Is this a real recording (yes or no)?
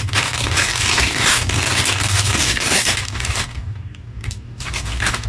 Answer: no